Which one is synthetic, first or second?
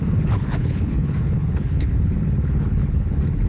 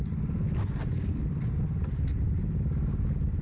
first